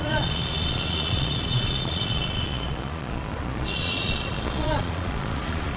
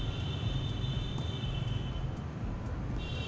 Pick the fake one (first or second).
first